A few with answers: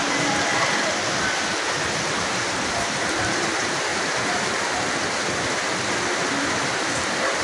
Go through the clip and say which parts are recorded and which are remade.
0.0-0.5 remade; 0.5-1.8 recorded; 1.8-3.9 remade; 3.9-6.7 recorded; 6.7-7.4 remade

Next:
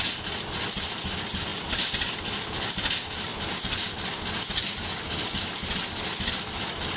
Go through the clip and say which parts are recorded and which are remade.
0.0-7.0 recorded

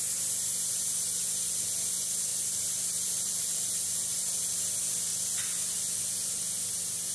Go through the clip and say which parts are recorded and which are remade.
0.0-2.3 recorded; 2.3-4.5 remade; 4.5-5.1 recorded; 5.1-6.3 remade; 6.3-7.1 recorded

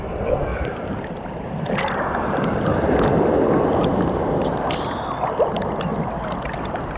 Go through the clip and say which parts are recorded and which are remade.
0.0-0.5 recorded; 0.5-4.7 remade; 4.7-7.0 recorded

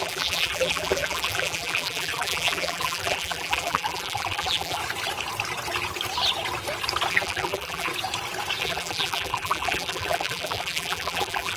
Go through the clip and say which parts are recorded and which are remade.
0.0-4.8 remade; 4.8-7.1 recorded; 7.1-7.9 remade; 7.9-8.6 recorded; 8.6-11.6 remade

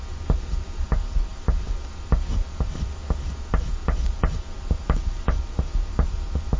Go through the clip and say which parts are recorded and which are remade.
0.0-6.6 remade